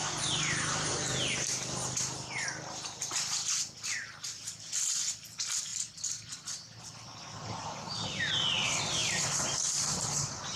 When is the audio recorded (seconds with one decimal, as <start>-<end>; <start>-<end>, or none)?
0.0-10.6